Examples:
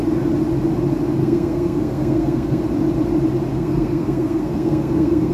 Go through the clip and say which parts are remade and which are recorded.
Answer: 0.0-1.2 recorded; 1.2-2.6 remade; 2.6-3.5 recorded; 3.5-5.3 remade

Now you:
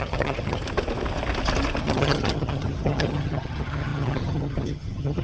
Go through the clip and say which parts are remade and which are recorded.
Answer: 0.0-0.6 remade; 0.6-1.8 recorded; 1.8-5.2 remade

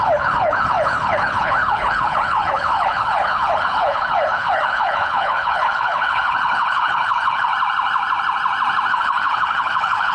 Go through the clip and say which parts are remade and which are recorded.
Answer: 0.0-7.5 remade; 7.5-8.9 recorded; 8.9-10.1 remade